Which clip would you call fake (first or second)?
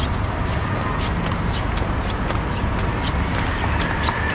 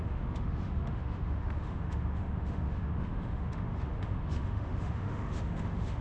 second